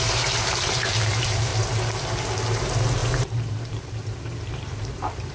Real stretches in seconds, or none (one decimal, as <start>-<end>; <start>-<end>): 1.5-2.4